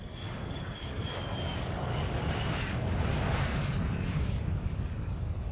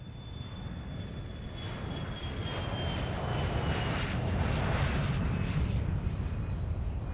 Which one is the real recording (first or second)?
second